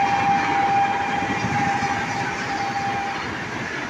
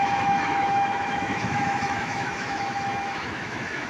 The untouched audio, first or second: first